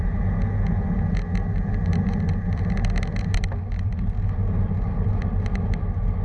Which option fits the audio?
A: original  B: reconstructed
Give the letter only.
A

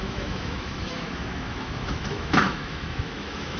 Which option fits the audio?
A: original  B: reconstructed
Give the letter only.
B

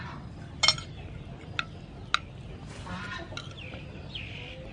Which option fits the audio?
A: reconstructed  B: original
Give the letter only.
B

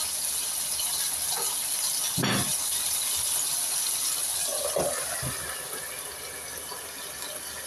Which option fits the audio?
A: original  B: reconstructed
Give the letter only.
A